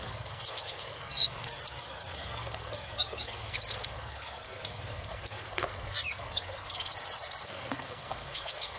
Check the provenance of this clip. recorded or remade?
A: remade